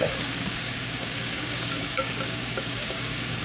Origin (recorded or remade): remade